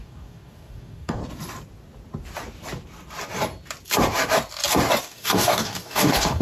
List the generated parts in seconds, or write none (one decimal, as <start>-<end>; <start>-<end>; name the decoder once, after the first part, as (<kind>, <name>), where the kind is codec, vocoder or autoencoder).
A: 0.0-1.2 (codec, DAC); 5.0-6.4